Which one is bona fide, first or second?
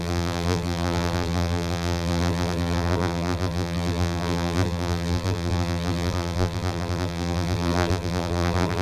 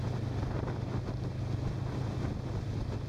second